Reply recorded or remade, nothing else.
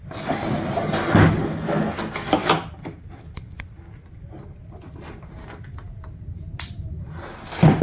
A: recorded